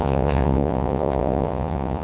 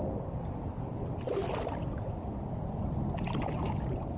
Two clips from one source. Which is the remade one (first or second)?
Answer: first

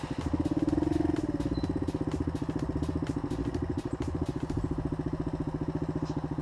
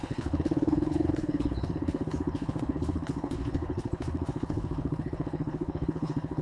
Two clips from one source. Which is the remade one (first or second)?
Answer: second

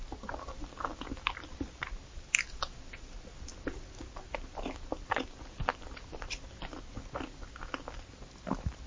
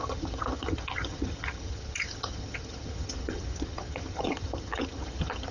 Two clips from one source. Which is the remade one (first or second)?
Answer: second